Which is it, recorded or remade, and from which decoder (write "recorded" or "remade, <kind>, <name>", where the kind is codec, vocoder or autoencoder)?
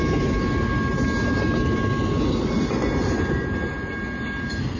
recorded